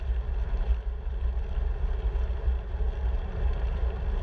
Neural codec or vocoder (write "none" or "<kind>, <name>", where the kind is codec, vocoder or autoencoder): none